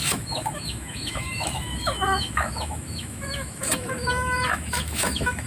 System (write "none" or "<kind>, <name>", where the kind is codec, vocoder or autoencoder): autoencoder, DAC-VAE